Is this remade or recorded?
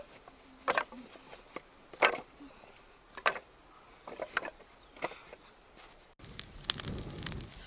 recorded